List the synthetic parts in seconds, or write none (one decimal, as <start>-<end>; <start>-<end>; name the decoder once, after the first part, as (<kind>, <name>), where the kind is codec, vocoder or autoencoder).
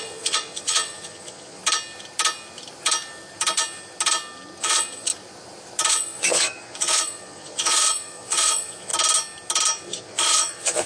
0.0-1.6 (vocoder, Vocos); 4.6-5.1; 5.9-8.9; 9.9-10.9